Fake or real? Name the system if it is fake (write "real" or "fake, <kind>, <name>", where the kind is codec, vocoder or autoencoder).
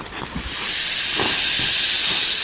real